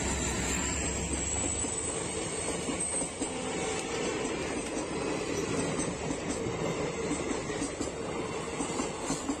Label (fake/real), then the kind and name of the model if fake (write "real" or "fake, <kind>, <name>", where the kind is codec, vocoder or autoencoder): real